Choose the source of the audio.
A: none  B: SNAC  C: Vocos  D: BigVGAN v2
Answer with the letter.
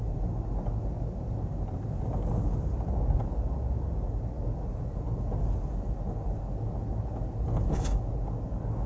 A